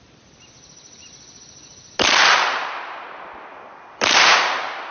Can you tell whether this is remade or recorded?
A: recorded